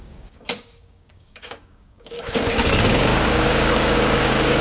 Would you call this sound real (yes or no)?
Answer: no